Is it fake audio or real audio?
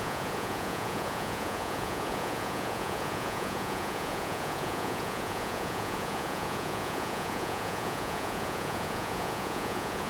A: fake